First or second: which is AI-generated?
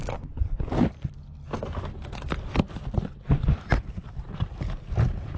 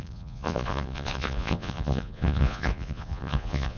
second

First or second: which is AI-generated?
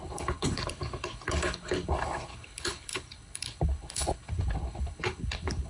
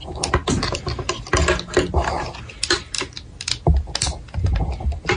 first